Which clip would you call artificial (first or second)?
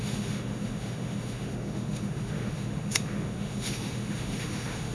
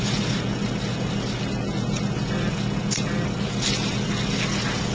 first